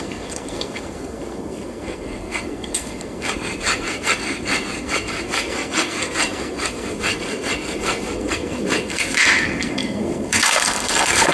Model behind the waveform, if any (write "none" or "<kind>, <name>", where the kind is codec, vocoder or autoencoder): codec, SNAC